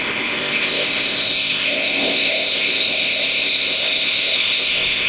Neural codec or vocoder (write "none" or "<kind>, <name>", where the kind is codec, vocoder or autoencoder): codec, ZipCodec